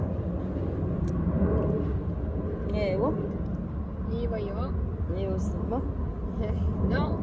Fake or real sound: real